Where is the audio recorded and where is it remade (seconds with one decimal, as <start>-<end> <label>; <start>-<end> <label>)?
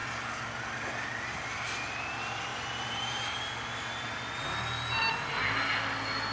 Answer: 0.0-2.5 recorded; 2.5-3.4 remade; 3.4-6.3 recorded